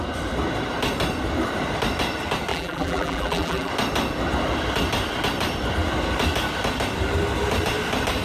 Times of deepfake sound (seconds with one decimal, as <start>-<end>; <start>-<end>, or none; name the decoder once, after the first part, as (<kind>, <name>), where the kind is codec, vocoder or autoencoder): 2.5-3.7 (vocoder, BigVGAN v2)